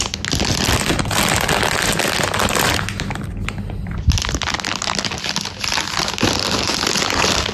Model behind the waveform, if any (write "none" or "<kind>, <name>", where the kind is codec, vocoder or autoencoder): none